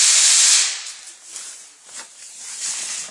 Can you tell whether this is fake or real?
real